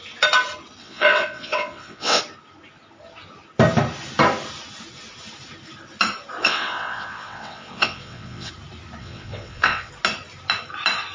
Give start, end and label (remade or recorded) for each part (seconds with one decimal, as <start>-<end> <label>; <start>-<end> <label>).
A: 0.0-0.8 recorded; 0.8-2.2 remade; 2.2-6.4 recorded; 6.4-8.5 remade; 8.5-9.0 recorded; 9.0-9.9 remade; 9.9-11.1 recorded